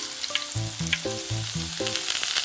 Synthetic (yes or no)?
no